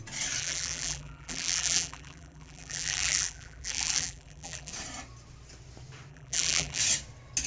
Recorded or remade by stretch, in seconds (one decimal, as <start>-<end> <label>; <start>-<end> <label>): 0.0-0.4 recorded; 0.4-4.7 remade; 4.7-6.1 recorded; 6.1-6.8 remade; 6.8-7.5 recorded